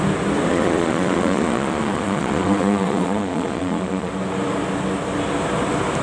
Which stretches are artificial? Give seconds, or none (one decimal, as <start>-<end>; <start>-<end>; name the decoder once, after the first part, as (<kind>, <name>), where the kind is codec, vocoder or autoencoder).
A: 0.5-4.1 (vocoder, Vocos)